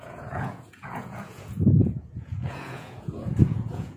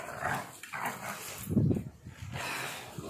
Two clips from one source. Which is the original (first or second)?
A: second